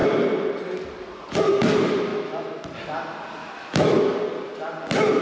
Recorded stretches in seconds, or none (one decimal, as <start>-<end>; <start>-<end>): 0.0-2.1; 2.6-3.4; 4.0-5.2